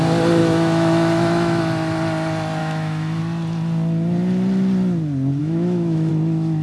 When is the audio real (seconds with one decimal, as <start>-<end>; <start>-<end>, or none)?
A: 0.0-0.4; 1.6-2.6; 3.2-5.4; 6.1-6.6